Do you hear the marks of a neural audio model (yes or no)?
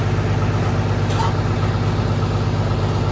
no